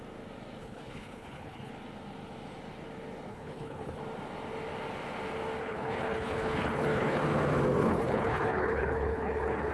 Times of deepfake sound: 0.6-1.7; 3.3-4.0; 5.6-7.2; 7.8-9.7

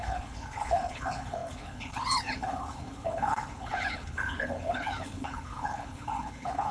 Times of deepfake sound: 0.0-6.7

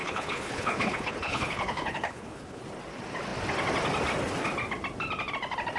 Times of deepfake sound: 0.0-2.6

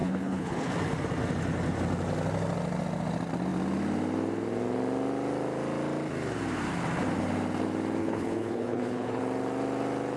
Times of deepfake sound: 0.0-0.7; 8.0-9.2

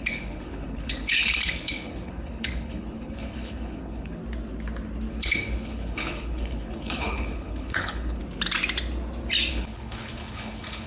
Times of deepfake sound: 0.0-4.2; 5.1-8.2; 9.5-10.9

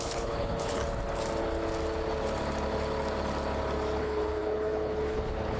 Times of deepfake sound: 0.0-0.8; 4.0-5.6